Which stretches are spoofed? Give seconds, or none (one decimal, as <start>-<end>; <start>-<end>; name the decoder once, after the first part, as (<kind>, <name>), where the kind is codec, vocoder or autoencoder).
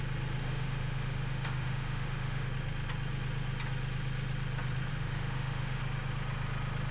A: 0.4-2.5 (autoencoder, DAC-VAE); 4.9-5.8